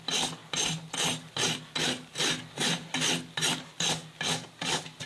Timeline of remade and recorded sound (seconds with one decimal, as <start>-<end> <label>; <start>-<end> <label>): 0.0-5.1 recorded